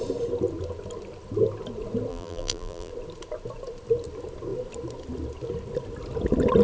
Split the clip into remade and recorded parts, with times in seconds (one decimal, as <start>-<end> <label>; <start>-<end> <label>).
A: 0.0-2.1 recorded; 2.1-2.9 remade; 2.9-6.6 recorded